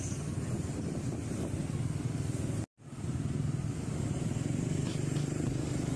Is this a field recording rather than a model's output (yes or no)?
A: yes